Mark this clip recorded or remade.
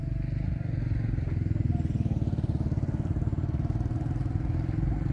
recorded